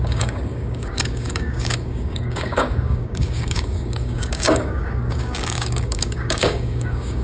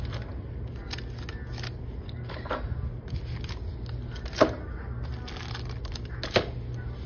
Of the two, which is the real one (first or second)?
second